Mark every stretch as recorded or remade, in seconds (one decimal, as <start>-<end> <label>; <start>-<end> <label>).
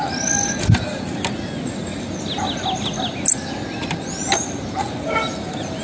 0.0-5.8 recorded